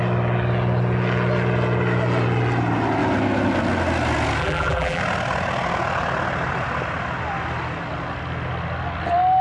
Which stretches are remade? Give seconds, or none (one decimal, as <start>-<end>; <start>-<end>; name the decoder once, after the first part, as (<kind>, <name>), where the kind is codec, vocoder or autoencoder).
4.4-5.0 (vocoder, BigVGAN v2)